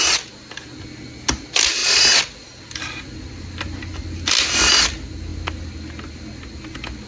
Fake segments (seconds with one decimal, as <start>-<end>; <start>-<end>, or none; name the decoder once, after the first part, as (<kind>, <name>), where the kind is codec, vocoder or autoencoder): none